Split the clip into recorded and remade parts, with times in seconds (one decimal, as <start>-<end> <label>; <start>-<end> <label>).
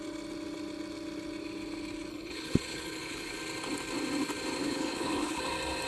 0.0-2.1 recorded; 2.1-3.4 remade; 3.4-4.6 recorded; 4.6-5.4 remade; 5.4-5.9 recorded